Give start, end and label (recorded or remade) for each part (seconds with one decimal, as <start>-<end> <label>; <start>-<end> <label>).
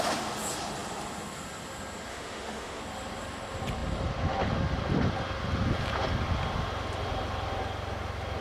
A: 0.0-2.1 recorded; 2.1-2.8 remade; 2.8-8.4 recorded